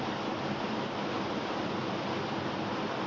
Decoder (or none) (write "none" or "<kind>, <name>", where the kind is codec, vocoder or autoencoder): none